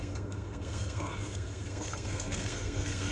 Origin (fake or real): fake